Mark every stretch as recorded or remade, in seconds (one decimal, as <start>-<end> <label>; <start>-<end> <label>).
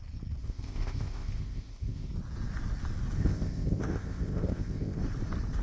0.0-0.4 recorded; 0.4-2.1 remade; 2.1-3.2 recorded; 3.2-5.0 remade; 5.0-5.6 recorded